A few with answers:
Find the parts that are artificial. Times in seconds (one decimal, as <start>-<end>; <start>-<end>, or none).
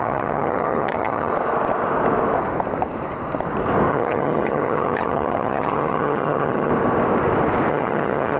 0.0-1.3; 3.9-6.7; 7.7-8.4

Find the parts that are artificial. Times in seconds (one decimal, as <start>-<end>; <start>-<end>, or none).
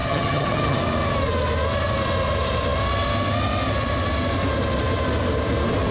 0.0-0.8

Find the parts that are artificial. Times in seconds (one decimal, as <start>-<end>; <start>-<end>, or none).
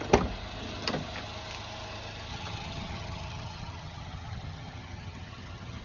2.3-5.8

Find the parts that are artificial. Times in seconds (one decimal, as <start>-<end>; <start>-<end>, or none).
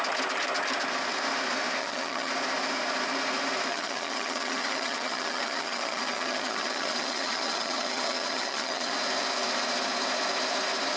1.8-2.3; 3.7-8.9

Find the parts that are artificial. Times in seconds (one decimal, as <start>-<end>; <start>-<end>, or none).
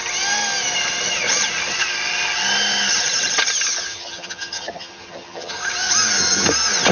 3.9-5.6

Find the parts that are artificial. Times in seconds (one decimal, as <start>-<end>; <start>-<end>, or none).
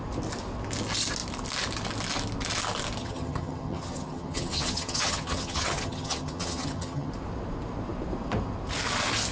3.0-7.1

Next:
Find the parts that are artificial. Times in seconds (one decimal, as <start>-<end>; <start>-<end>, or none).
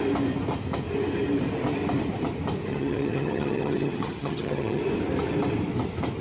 2.7-4.8